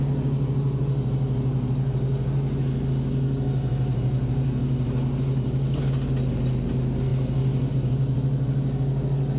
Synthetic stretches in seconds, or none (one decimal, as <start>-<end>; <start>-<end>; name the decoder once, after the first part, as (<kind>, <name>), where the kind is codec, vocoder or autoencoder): none